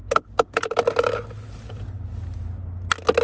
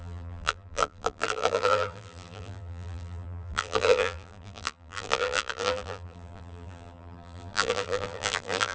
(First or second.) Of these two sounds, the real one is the first